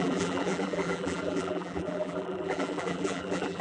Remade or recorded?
remade